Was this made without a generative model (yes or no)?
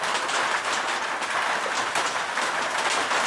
yes